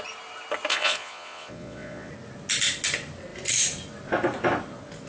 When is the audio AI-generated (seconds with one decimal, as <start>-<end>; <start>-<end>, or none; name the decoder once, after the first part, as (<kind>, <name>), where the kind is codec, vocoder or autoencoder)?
0.7-2.1 (vocoder, Vocos)